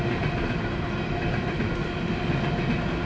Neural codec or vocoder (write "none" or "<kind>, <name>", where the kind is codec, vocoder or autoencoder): none